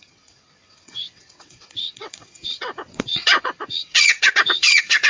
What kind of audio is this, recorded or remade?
remade